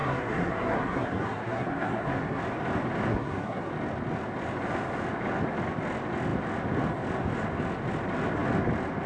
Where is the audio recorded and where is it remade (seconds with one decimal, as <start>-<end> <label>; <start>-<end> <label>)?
0.0-2.4 remade; 2.4-3.1 recorded; 3.1-3.7 remade; 3.7-9.1 recorded